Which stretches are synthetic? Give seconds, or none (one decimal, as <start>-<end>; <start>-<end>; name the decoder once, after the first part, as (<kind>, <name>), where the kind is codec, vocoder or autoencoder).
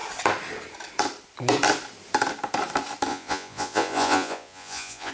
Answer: 3.1-5.1 (vocoder, Vocos)